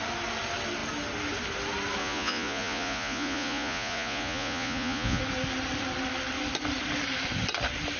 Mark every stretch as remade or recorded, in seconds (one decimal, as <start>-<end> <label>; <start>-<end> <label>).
0.0-2.0 recorded; 2.0-5.2 remade; 5.2-8.0 recorded